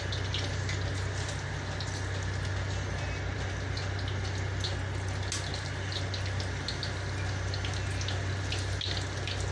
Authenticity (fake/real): real